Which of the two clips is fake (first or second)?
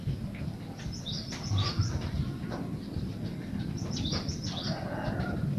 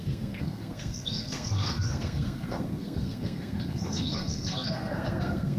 second